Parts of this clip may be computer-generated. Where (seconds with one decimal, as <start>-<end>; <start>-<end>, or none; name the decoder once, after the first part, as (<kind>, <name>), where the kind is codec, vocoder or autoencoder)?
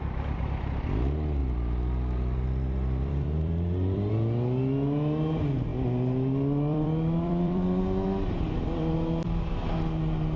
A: 1.4-4.1 (vocoder, BigVGAN v2); 5.7-7.8